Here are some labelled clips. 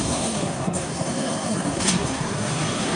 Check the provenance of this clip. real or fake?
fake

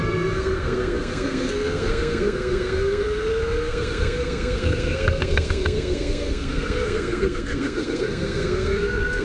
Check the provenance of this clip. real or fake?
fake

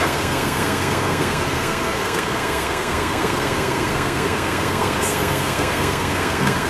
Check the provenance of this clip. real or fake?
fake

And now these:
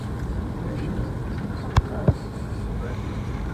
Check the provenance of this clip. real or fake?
real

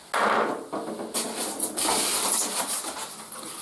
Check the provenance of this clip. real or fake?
real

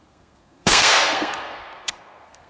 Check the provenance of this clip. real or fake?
fake